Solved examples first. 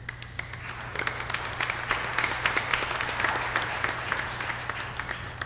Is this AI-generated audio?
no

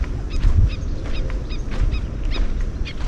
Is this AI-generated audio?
no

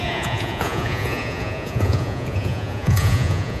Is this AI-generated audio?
yes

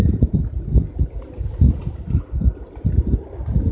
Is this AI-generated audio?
no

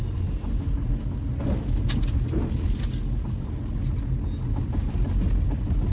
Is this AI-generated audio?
no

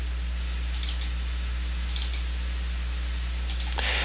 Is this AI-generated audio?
no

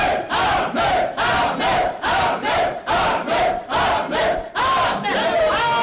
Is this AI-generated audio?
no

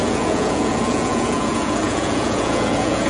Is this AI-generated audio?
yes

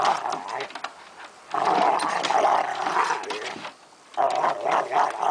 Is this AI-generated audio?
no